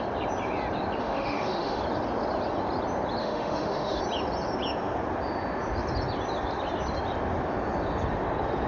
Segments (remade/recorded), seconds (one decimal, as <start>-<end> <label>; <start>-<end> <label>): 0.0-1.0 recorded; 1.0-1.8 remade; 1.8-3.2 recorded; 3.2-4.0 remade; 4.0-8.7 recorded